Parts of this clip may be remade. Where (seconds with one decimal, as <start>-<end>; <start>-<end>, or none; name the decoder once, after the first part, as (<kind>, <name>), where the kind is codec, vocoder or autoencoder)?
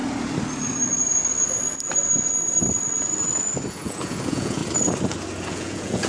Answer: 3.7-4.6 (vocoder, Vocos); 5.5-6.1